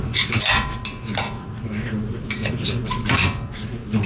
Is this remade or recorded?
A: recorded